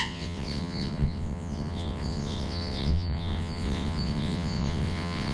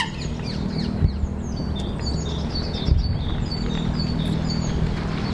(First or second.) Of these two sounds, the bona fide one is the second